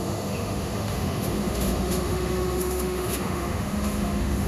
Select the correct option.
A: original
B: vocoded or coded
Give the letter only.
B